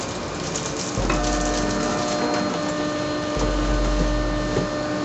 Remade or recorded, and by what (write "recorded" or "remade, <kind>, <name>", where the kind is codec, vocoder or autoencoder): recorded